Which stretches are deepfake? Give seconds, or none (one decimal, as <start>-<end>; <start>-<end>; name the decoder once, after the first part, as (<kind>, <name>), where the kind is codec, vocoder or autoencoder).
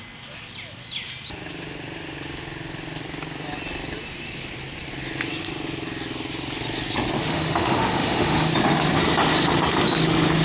7.2-8.5 (autoencoder, DAC-VAE)